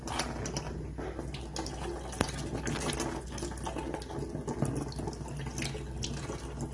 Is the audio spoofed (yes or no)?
no